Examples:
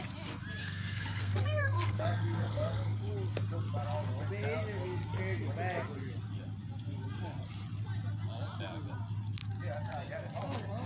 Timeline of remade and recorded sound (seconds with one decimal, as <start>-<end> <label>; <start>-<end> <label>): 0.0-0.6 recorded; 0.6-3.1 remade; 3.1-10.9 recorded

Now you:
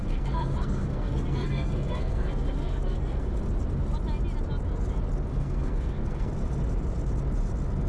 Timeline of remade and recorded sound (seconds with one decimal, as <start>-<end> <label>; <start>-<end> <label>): 0.0-3.3 remade; 3.3-5.3 recorded; 5.3-6.3 remade; 6.3-7.9 recorded

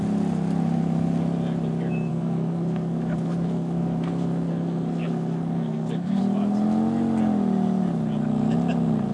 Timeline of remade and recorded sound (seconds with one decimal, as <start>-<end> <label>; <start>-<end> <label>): 0.0-2.1 recorded; 2.1-6.2 remade; 6.2-9.1 recorded

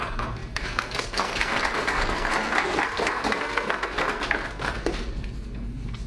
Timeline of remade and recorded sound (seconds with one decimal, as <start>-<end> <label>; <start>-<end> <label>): 0.0-6.1 remade

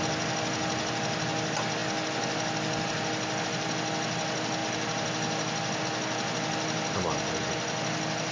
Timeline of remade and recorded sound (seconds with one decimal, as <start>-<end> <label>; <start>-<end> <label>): 0.0-8.3 recorded

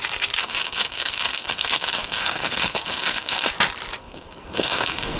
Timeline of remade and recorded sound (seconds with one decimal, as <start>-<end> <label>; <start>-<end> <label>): 0.0-0.4 recorded; 0.4-3.5 remade; 3.5-4.0 recorded; 4.0-5.2 remade

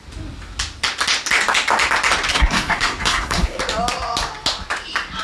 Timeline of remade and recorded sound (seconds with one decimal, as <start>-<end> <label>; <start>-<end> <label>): 0.0-2.3 recorded; 2.3-3.6 remade; 3.6-5.2 recorded